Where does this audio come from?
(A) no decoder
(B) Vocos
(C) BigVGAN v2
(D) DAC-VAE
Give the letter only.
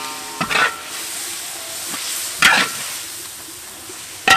A